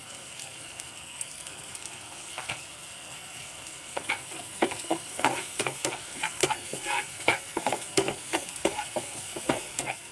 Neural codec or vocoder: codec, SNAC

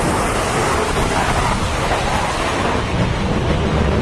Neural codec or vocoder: none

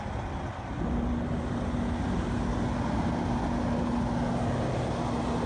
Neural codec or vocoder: none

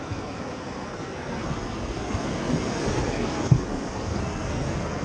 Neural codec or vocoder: codec, SNAC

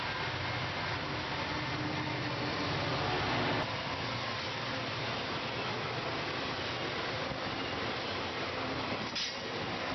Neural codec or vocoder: none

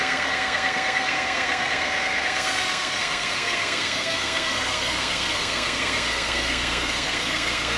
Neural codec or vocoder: codec, SNAC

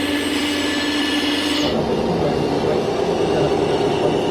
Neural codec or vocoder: none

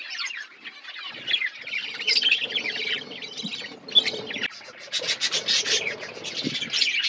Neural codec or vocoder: none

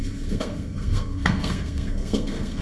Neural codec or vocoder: codec, SNAC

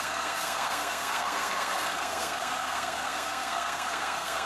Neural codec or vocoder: codec, SNAC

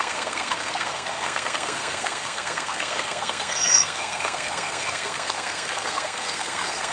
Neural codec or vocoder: codec, SNAC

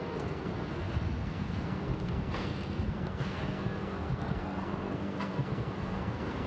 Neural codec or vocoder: codec, SNAC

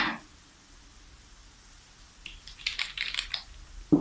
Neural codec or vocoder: none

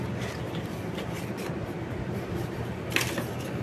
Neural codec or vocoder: none